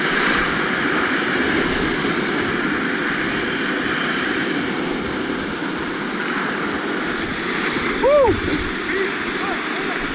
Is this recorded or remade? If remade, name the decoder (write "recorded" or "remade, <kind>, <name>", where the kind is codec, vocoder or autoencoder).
recorded